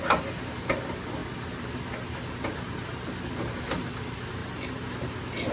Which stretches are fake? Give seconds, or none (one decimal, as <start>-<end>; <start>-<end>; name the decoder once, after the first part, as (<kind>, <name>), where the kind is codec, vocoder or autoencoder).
none